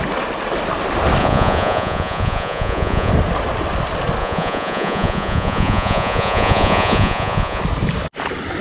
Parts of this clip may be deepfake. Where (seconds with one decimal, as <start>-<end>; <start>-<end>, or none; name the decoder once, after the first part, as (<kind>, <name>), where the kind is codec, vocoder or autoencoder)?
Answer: 1.2-3.1 (vocoder, Vocos); 4.2-7.6